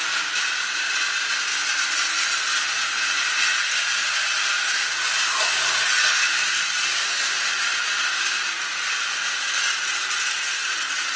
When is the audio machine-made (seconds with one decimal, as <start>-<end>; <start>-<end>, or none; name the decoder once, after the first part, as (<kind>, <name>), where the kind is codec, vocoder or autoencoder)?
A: none